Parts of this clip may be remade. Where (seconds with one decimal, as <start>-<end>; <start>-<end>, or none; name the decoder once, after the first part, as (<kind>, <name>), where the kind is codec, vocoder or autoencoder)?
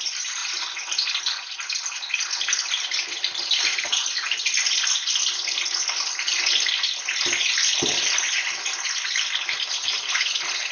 none